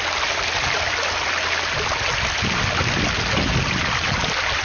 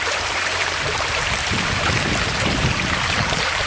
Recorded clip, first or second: first